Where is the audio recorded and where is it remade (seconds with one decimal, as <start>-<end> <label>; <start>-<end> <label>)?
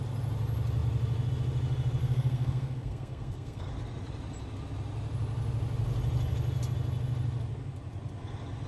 0.0-2.0 recorded; 2.0-3.7 remade; 3.7-8.7 recorded